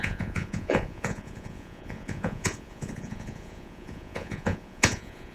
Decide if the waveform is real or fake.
fake